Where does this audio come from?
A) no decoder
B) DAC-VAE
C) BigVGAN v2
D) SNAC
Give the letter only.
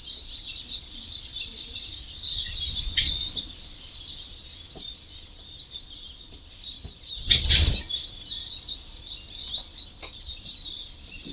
A